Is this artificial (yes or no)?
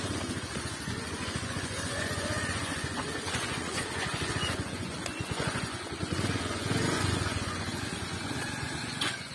yes